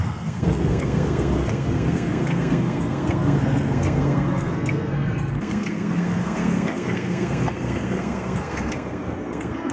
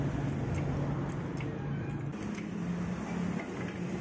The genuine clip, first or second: second